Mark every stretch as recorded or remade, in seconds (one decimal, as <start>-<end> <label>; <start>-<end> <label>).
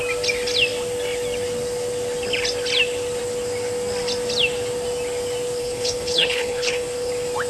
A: 0.0-5.6 recorded; 5.6-7.1 remade; 7.1-7.5 recorded